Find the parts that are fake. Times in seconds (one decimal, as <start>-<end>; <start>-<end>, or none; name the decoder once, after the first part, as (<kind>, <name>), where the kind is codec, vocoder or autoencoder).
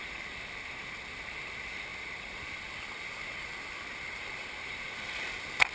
none